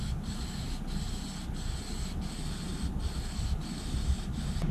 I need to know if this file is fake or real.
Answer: real